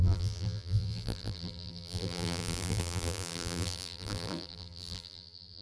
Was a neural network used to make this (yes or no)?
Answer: yes